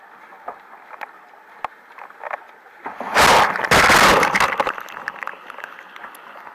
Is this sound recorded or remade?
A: recorded